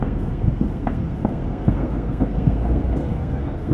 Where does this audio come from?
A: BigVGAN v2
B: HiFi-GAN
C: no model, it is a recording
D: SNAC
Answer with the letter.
D